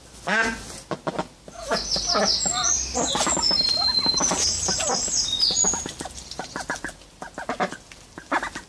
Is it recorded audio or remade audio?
recorded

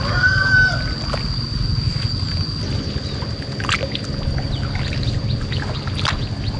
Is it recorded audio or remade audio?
recorded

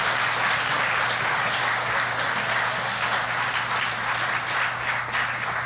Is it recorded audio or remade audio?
recorded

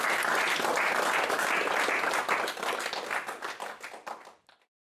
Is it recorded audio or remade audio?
recorded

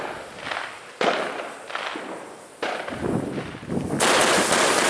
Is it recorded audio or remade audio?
recorded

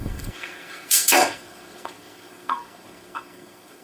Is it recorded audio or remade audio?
remade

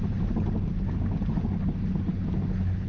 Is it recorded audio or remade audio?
recorded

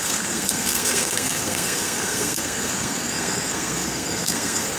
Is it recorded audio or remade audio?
remade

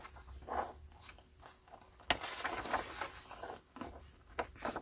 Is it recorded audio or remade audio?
recorded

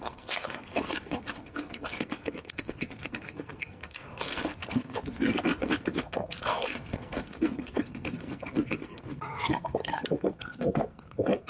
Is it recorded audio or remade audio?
remade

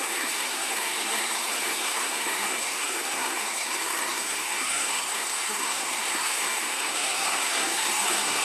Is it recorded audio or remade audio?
remade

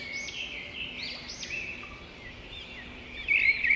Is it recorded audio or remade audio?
recorded